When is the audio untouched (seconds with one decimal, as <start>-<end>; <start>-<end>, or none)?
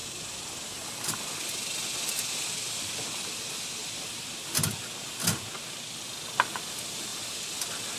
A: 1.4-8.0